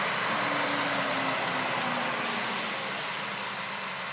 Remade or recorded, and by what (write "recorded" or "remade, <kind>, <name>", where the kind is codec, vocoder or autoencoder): recorded